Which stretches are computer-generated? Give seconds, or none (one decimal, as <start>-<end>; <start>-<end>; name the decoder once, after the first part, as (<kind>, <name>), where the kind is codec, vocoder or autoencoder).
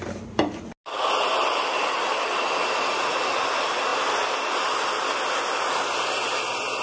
none